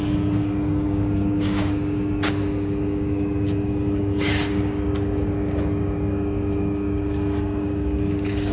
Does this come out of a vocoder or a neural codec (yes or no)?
yes